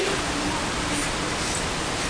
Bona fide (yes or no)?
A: yes